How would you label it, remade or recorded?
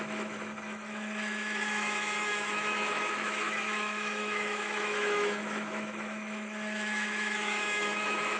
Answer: remade